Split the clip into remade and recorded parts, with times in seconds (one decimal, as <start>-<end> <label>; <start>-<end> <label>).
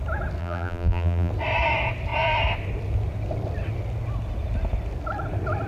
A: 0.0-0.4 recorded; 0.4-1.3 remade; 1.3-5.7 recorded